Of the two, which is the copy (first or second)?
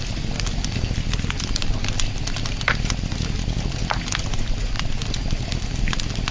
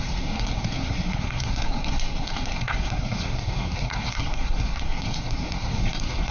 second